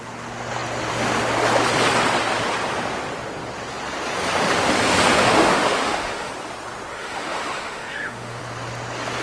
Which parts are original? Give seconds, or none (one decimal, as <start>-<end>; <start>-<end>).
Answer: 0.0-5.4; 6.3-6.9; 8.4-9.2